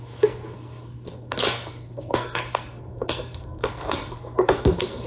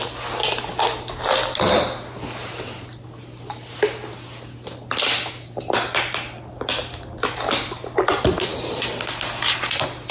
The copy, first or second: first